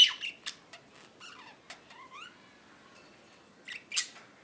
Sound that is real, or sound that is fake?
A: real